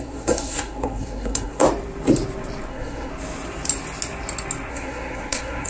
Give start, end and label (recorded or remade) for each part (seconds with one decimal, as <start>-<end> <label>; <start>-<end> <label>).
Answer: 0.0-1.6 remade; 1.6-2.7 recorded; 2.7-3.1 remade; 3.1-4.7 recorded; 4.7-5.7 remade